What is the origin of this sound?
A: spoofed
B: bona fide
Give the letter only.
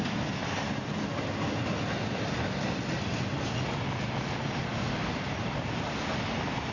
B